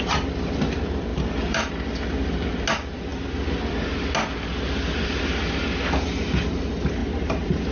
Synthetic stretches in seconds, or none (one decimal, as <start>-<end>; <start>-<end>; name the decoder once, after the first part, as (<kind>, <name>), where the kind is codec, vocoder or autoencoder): 1.1-1.7 (vocoder, BigVGAN v2); 7.0-7.7